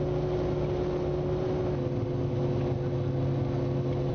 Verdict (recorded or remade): recorded